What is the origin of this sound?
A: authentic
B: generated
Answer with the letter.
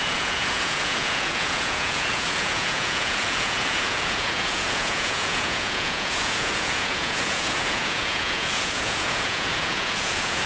B